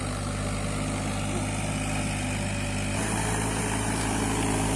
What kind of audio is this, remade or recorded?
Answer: recorded